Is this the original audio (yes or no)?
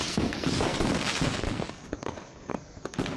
no